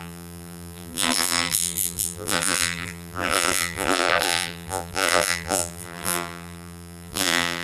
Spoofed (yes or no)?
yes